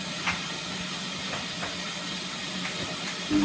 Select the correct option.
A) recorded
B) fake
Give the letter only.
A